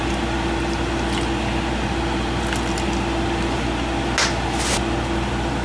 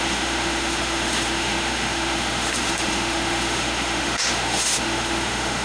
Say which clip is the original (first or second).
first